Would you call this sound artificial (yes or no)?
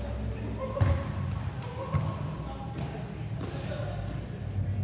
no